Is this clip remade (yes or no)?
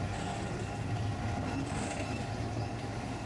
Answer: no